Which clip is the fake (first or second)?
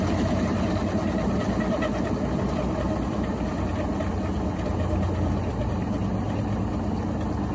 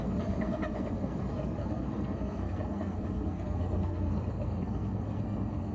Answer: second